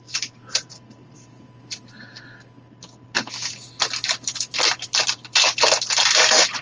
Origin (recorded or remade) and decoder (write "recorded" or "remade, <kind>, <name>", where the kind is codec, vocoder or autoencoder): recorded